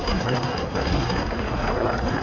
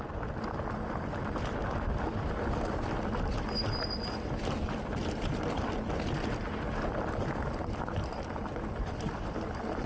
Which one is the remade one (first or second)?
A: first